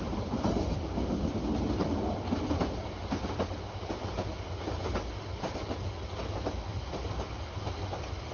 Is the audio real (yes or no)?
yes